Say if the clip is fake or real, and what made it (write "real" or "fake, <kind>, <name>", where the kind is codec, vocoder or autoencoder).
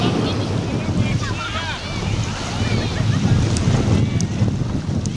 real